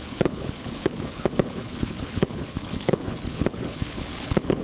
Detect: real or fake fake